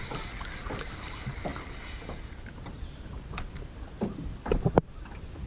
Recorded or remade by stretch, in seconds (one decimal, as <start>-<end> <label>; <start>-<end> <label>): 0.0-5.5 recorded